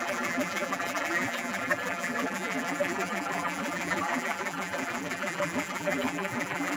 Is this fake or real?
fake